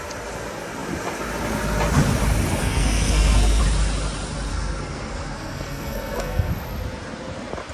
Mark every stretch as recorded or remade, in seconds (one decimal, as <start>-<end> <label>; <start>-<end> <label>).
0.0-2.6 recorded; 2.6-3.6 remade; 3.6-4.5 recorded; 4.5-6.5 remade; 6.5-7.7 recorded